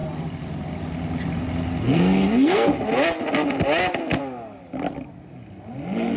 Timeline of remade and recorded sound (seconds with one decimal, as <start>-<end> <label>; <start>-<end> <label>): 0.0-1.8 recorded; 1.8-2.7 remade; 2.7-6.2 recorded